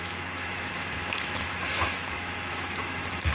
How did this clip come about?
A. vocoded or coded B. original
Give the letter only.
A